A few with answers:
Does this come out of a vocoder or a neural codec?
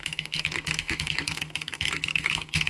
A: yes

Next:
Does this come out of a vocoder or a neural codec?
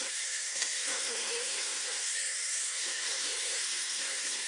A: yes